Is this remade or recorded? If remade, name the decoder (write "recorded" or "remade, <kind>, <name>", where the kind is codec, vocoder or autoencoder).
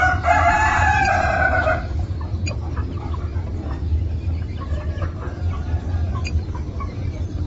remade, vocoder, BigVGAN v2